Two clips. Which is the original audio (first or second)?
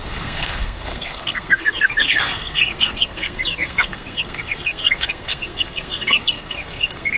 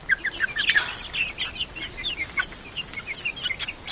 second